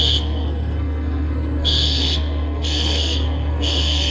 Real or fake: fake